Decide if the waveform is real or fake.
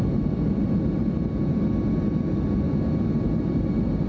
real